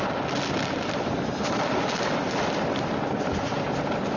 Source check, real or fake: real